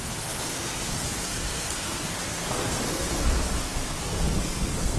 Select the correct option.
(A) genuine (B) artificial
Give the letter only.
B